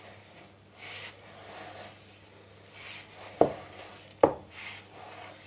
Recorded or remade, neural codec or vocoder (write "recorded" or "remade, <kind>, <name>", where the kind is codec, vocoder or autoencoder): recorded